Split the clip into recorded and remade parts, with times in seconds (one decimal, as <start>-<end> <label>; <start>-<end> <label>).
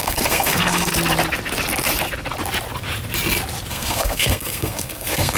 0.0-0.9 remade; 0.9-3.7 recorded; 3.7-5.4 remade